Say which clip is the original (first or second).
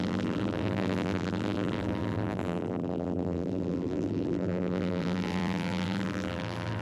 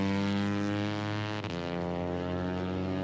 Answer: second